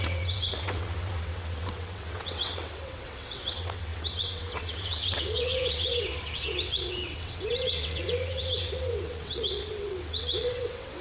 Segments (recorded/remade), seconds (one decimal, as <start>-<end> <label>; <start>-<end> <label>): 0.0-11.0 remade